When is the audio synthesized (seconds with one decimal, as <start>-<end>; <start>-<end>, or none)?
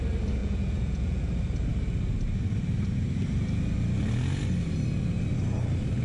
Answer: 0.4-1.2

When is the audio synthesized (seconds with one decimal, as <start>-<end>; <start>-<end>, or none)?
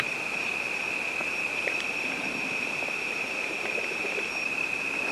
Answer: 1.2-4.3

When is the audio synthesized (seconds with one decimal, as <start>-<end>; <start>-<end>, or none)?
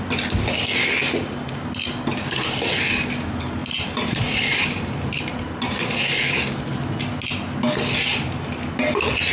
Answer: 3.6-6.7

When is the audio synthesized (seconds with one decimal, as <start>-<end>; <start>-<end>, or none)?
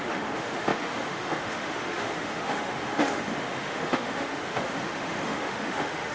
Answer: 0.0-6.1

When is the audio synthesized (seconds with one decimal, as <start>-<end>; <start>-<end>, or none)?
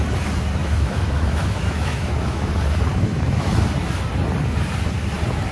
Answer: 0.6-2.5; 2.9-3.5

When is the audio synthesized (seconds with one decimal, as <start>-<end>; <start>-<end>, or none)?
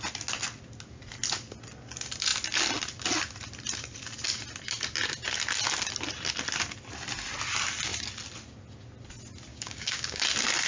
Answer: 9.5-10.2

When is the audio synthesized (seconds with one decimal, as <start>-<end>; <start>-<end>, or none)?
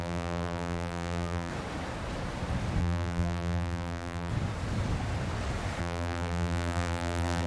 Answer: 0.0-1.5; 2.8-4.3; 5.8-7.5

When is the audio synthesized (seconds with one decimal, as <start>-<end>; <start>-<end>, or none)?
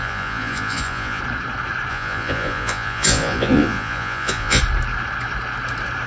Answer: 0.0-1.2; 1.9-4.6